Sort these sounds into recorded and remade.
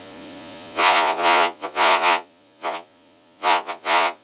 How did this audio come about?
remade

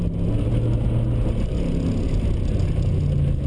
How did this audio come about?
recorded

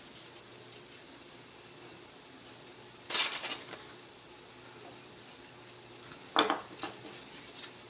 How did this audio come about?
recorded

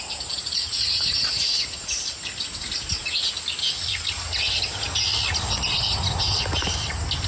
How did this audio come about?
recorded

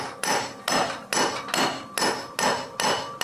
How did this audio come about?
recorded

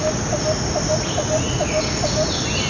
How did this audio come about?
recorded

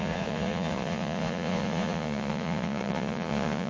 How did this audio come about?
remade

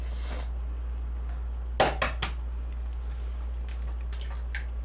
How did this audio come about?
recorded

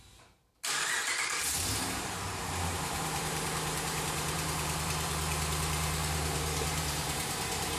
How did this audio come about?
remade